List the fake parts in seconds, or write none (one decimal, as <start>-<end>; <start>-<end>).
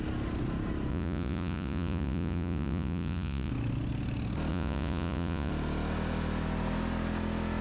0.9-3.5; 4.5-5.5